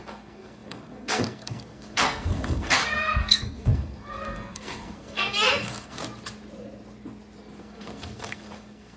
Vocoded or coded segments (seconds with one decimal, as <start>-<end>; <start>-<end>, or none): 0.0-6.0; 7.6-9.0